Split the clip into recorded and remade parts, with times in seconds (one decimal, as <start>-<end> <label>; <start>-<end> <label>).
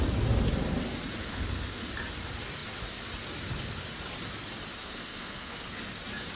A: 0.0-1.2 recorded; 1.2-1.8 remade; 1.8-4.8 recorded; 4.8-5.8 remade; 5.8-6.4 recorded